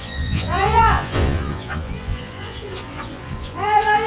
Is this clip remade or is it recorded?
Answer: remade